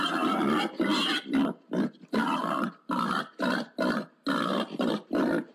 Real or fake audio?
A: real